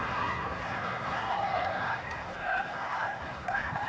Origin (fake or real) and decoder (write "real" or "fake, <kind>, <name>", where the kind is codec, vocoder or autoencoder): fake, codec, SNAC